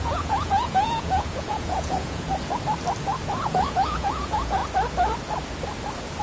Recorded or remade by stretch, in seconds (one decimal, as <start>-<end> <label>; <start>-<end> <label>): 0.0-2.3 remade; 2.3-3.3 recorded; 3.3-4.6 remade; 4.6-6.2 recorded